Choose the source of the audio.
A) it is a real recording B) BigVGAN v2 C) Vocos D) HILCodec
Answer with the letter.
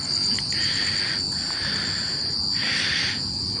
A